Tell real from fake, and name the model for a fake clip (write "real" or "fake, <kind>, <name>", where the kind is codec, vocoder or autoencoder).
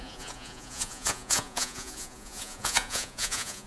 fake, vocoder, Vocos